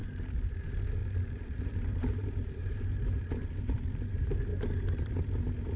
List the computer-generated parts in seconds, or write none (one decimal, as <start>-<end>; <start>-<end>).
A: 0.0-0.6; 1.0-3.2